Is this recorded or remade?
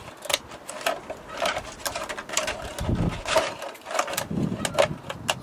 recorded